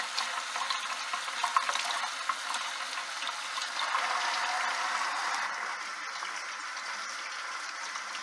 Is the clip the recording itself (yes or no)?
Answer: yes